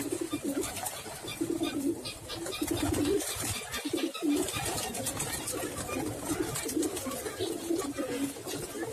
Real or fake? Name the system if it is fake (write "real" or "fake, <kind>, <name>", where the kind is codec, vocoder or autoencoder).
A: real